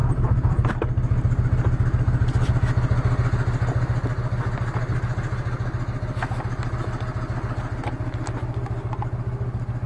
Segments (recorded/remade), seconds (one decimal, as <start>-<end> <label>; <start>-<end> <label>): 0.0-0.7 remade; 0.7-9.9 recorded